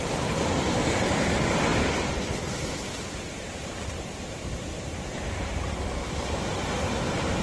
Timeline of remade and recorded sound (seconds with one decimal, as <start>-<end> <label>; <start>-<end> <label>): 0.0-7.4 recorded